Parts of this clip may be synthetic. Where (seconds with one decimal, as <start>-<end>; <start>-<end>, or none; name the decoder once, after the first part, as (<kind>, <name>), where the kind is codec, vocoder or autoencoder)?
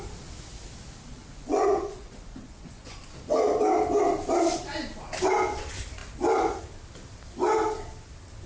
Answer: 1.2-3.0 (vocoder, Vocos)